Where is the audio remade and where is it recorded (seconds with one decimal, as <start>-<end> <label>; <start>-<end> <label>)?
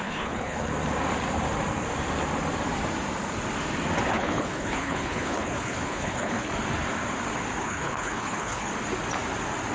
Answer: 0.0-0.7 remade; 0.7-4.1 recorded; 4.1-6.5 remade; 6.5-7.6 recorded; 7.6-8.7 remade; 8.7-9.7 recorded